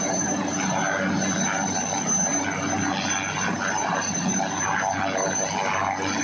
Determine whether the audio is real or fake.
real